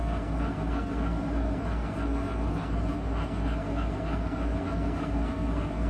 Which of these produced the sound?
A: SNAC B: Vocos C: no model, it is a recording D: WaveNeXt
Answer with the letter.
A